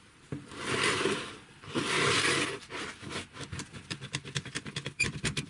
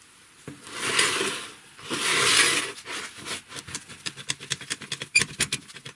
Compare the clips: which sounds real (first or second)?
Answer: second